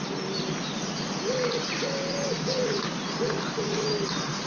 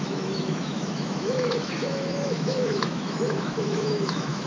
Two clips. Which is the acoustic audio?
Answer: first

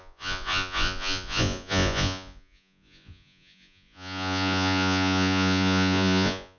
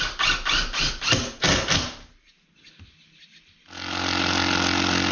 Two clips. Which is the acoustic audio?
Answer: second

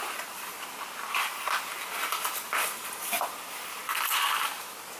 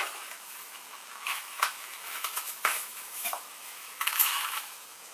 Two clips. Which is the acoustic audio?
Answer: first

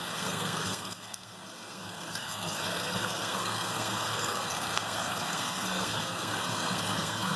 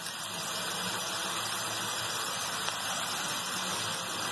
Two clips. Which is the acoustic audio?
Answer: second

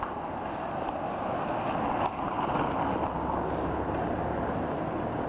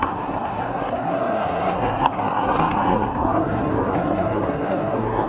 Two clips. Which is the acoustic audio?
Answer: first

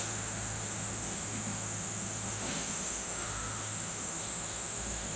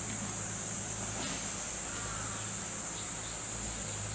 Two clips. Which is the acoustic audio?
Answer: second